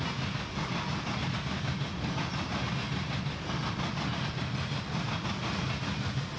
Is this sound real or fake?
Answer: real